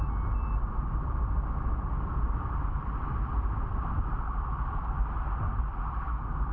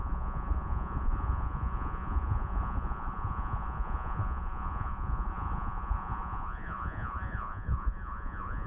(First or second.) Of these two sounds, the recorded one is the first